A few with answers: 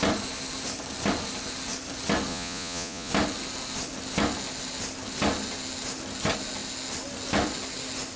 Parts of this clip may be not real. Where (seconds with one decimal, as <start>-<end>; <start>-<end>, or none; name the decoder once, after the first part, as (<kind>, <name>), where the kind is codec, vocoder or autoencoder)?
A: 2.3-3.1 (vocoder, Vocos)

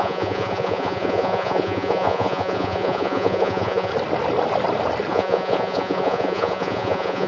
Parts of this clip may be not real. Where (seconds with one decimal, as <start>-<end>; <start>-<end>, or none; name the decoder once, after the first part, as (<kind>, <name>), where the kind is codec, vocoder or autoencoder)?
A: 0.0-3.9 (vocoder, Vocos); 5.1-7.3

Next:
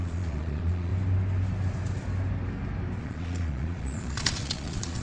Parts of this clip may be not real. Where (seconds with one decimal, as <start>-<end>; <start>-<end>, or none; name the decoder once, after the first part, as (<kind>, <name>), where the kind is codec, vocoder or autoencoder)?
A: 0.0-0.9 (vocoder, Vocos); 3.0-5.0